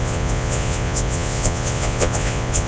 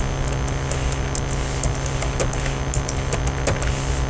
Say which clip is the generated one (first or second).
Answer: first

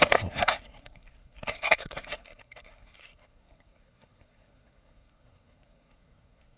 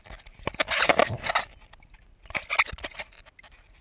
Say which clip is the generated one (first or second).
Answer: first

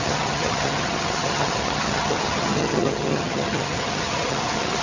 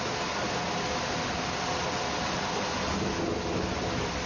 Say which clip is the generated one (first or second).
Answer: first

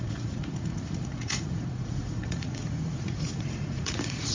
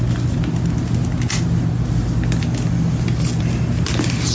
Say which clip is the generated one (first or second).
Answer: first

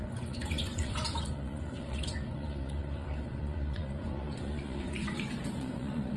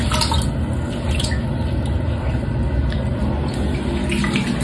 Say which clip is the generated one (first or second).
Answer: first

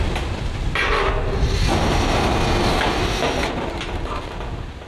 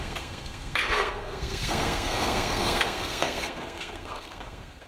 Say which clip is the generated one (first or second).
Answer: second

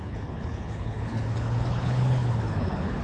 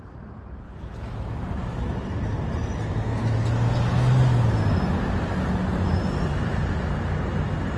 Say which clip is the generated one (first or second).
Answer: first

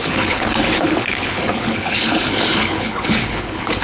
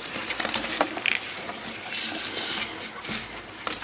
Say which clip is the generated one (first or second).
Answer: first